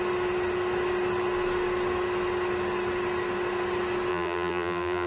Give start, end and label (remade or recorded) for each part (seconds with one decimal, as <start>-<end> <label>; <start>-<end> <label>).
0.0-4.1 recorded; 4.1-5.1 remade